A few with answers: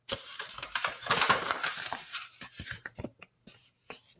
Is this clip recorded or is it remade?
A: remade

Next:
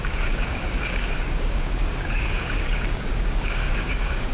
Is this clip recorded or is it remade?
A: remade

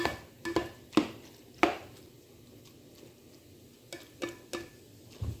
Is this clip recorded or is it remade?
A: recorded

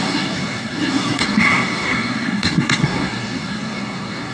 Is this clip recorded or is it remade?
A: remade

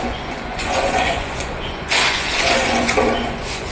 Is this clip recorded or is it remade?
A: remade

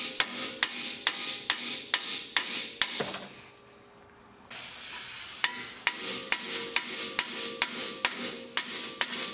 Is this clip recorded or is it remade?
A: recorded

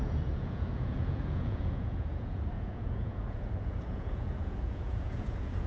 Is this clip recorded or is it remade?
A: remade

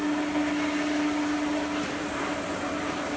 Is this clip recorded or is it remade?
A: recorded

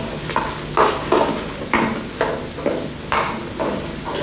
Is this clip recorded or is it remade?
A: recorded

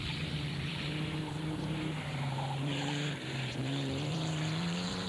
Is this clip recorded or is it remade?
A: remade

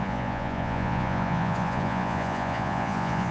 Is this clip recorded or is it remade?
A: remade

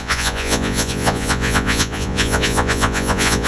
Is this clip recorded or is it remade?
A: remade